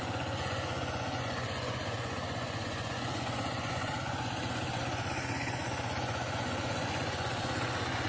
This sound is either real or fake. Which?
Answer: fake